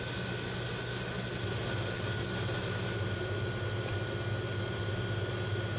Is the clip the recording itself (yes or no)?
yes